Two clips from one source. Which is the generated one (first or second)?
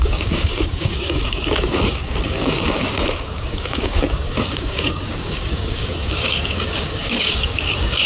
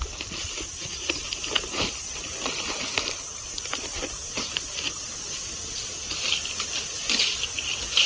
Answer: first